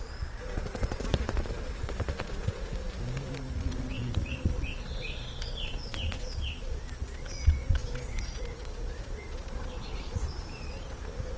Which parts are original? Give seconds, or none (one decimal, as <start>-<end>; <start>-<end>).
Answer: 2.7-3.5